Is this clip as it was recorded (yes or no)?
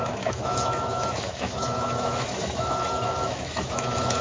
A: no